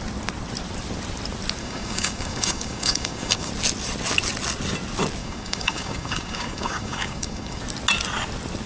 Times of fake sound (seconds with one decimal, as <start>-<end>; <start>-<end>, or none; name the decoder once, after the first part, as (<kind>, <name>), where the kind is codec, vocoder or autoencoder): 1.6-3.5 (codec, DAC); 5.2-7.6